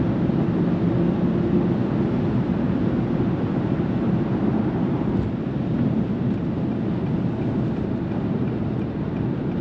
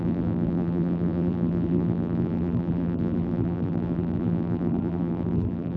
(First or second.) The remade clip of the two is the second